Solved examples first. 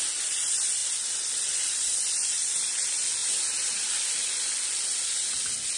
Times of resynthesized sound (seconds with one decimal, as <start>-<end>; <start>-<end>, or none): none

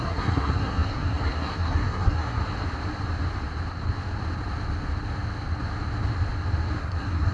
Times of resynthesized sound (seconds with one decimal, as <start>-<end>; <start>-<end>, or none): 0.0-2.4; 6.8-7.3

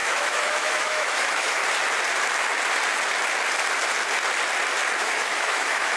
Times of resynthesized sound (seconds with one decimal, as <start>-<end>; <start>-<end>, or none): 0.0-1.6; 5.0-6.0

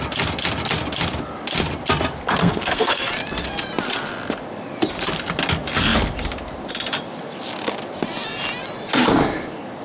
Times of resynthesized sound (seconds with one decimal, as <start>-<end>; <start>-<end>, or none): 2.4-3.1